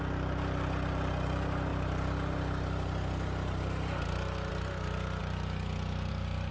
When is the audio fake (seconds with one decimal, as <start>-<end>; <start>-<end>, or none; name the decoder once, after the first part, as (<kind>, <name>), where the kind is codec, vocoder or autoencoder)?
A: none